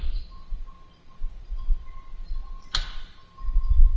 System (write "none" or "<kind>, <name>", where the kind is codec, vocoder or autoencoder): none